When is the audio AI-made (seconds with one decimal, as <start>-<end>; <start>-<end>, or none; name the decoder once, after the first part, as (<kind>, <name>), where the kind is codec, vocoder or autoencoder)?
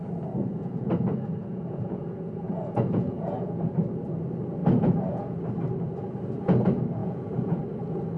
0.5-3.8 (vocoder, Vocos); 4.6-5.4; 7.0-7.6